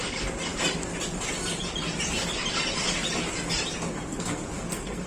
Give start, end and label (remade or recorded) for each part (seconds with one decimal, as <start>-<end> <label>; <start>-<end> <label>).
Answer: 0.0-4.1 recorded; 4.1-5.1 remade